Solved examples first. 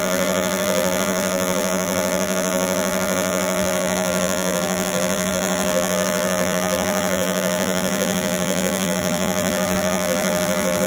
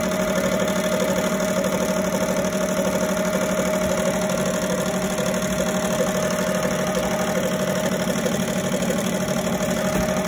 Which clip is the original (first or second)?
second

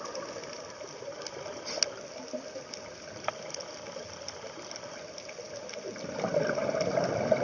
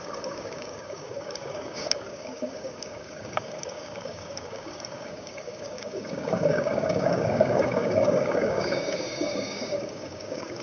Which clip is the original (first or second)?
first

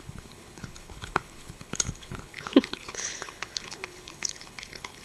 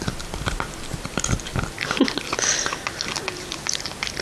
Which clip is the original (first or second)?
second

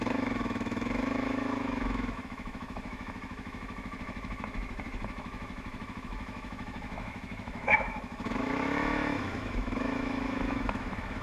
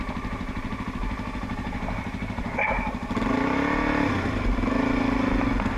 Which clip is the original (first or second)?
second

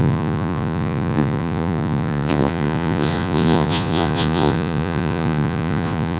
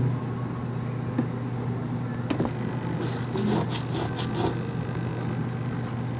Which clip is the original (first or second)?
second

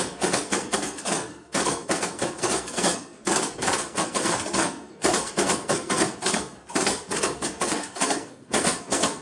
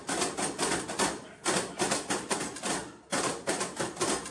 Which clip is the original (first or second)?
second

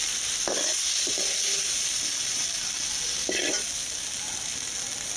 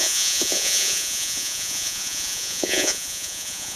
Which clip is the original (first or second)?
first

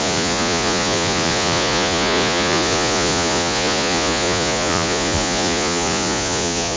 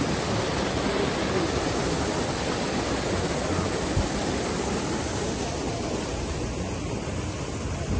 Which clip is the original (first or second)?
second